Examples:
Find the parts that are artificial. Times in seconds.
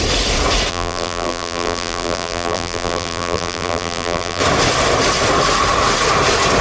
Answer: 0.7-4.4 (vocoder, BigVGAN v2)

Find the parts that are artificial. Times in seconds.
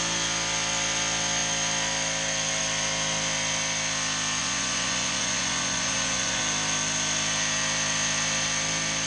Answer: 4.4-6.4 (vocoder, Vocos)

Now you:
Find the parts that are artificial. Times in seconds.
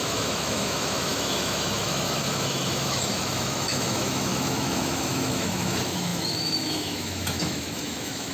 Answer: 0.0-8.3 (autoencoder, DAC-VAE)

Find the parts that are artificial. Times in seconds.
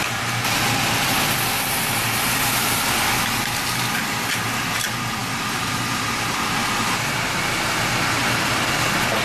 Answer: 5.2-7.4 (vocoder, BigVGAN v2)